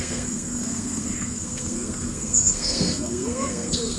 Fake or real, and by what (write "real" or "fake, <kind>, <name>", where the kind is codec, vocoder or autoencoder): fake, codec, SNAC